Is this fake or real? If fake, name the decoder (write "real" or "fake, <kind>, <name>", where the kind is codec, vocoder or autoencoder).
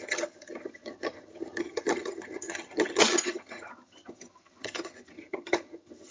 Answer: fake, vocoder, HiFi-GAN